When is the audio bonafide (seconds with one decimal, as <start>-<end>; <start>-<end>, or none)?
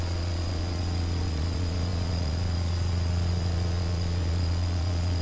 none